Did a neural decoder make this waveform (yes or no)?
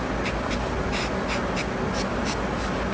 no